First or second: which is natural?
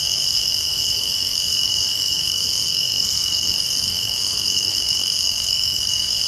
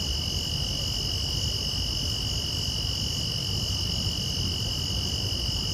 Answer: second